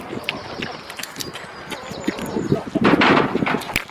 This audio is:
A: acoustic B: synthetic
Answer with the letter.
A